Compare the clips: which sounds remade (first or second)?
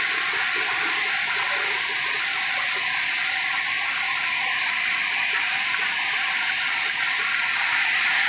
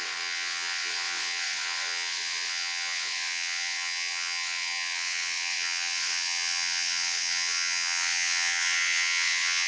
second